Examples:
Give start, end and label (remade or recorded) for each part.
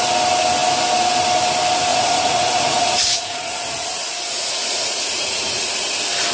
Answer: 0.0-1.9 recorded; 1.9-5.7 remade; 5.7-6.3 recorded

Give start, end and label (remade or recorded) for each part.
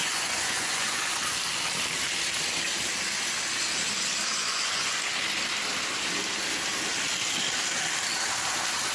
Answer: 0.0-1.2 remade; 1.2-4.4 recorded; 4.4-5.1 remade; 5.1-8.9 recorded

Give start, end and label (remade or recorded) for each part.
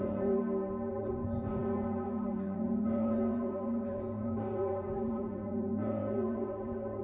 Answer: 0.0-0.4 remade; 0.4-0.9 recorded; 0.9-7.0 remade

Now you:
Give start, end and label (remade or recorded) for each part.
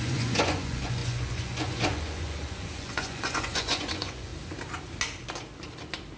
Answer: 0.0-4.3 remade; 4.3-6.2 recorded